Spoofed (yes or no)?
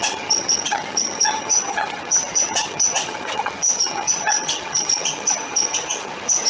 yes